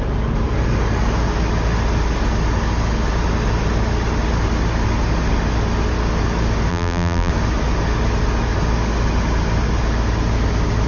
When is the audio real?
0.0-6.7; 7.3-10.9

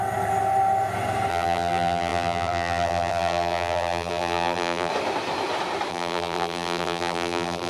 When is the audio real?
0.0-1.3; 4.9-5.9

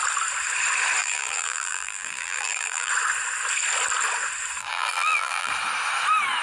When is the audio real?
0.0-1.0; 2.9-4.6; 5.5-6.4

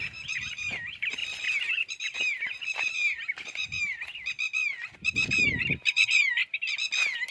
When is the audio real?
1.2-1.7; 4.1-5.0; 6.4-7.3